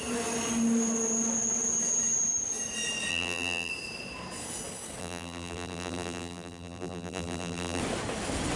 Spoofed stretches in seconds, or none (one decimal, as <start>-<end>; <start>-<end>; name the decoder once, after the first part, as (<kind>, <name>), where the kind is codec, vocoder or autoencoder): 3.1-3.7 (vocoder, BigVGAN v2); 5.0-7.8